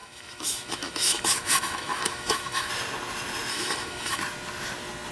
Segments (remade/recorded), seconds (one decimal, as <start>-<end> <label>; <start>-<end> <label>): 0.0-2.7 remade; 2.7-3.5 recorded; 3.5-4.2 remade; 4.2-5.1 recorded